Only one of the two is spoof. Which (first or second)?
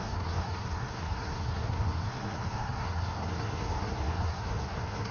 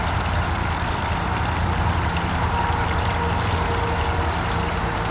first